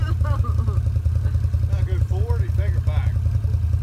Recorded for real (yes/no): yes